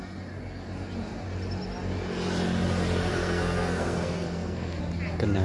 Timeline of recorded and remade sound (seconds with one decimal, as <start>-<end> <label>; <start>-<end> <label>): 0.0-3.1 recorded; 3.1-4.8 remade; 4.8-5.4 recorded